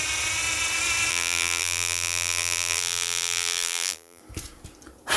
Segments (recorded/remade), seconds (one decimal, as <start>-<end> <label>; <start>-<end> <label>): 0.0-1.1 recorded; 1.1-4.2 remade; 4.2-5.2 recorded